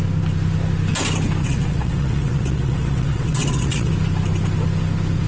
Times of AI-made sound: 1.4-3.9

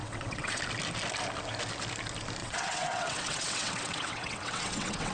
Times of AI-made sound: 0.0-0.6; 2.4-5.1